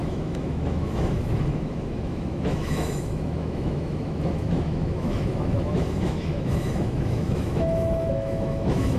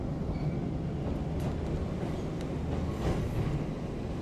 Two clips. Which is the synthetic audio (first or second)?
first